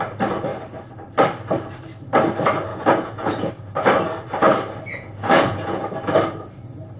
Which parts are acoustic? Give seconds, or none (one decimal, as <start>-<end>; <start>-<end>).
0.0-2.7; 3.5-4.9; 5.8-7.0